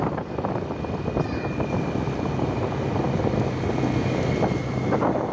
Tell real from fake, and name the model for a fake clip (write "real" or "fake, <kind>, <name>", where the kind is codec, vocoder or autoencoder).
real